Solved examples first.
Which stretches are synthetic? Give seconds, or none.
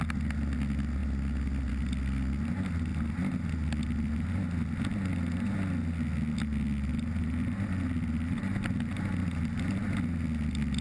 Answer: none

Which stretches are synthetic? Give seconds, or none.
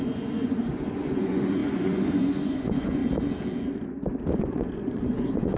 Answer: 0.0-3.0; 4.4-5.6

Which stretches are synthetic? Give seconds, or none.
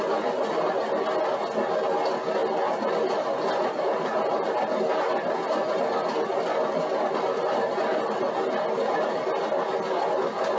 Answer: none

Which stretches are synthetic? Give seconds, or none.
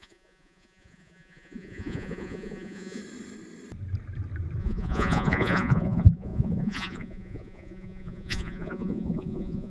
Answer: 0.0-3.0; 4.6-9.7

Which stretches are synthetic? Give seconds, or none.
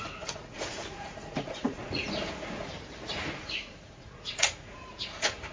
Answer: 0.0-2.7; 3.3-5.5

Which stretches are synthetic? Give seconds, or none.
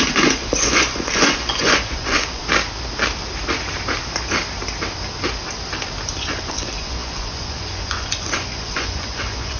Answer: 0.0-2.4; 6.2-9.6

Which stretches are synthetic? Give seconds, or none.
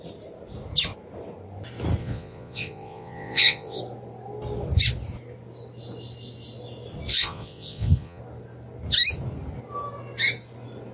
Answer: 2.0-3.8; 7.1-8.2